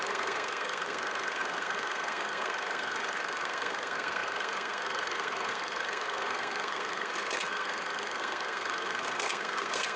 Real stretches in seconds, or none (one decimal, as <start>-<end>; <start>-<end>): none